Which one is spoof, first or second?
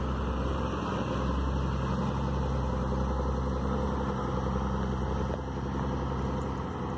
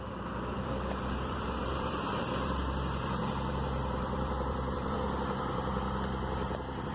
second